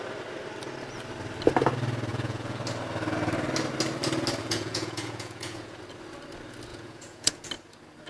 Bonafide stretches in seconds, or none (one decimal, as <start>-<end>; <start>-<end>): 0.0-2.1; 2.6-4.4; 5.8-6.7; 7.4-8.1